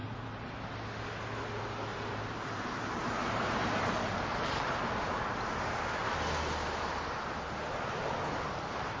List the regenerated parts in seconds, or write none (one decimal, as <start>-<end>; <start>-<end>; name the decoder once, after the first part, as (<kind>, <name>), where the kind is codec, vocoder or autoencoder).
0.0-0.5 (vocoder, BigVGAN v2); 1.9-5.2